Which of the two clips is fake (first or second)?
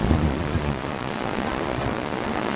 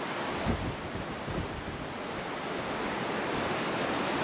first